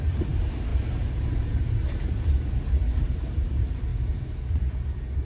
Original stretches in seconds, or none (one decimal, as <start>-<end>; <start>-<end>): none

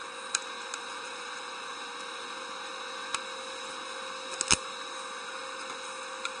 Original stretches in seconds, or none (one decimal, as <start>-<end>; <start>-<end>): 0.0-0.9; 1.6-6.4